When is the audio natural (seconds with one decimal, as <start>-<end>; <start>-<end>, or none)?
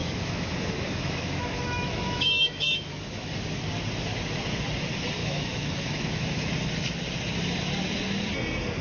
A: 3.3-5.2; 6.5-8.8